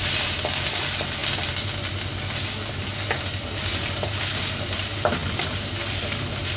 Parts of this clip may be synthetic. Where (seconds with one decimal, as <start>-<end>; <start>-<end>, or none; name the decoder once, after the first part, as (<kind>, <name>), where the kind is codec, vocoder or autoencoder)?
none